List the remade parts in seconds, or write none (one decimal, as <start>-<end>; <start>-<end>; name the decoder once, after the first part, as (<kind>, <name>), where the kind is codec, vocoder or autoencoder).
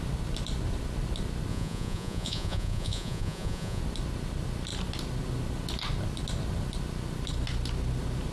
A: 1.5-3.8 (vocoder, Vocos)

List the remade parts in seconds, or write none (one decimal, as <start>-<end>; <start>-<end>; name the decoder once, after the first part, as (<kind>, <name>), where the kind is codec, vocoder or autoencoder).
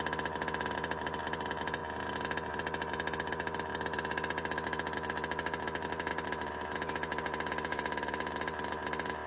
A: none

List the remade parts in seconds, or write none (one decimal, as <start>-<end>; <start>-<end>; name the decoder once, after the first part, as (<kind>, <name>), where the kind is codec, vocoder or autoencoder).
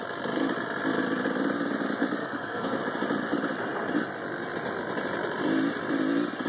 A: 2.2-2.8 (codec, SNAC)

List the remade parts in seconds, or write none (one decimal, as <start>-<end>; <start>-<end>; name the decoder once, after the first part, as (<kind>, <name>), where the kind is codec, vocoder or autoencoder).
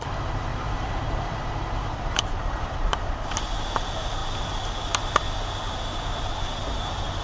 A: 0.5-3.1 (vocoder, BigVGAN v2)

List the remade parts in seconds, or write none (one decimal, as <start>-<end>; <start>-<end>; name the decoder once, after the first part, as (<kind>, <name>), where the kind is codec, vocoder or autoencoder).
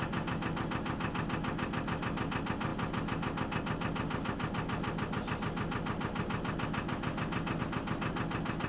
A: none